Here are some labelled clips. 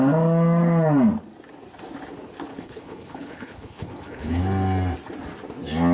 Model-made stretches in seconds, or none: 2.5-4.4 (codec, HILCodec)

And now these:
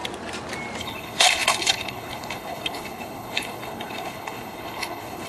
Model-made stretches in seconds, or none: 0.8-5.3 (codec, HILCodec)

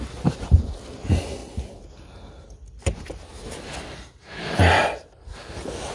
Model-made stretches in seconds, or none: none